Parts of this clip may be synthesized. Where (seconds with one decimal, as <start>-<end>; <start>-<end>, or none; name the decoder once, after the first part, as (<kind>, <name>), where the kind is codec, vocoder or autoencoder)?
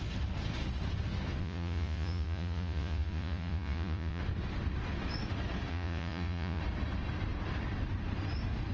1.4-4.2 (vocoder, Vocos); 5.7-6.6